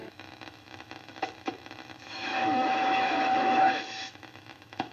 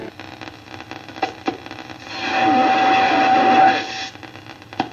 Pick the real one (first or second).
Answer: second